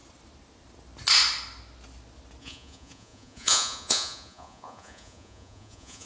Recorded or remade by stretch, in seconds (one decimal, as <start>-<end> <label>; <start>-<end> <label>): 0.0-2.4 recorded; 2.4-6.1 remade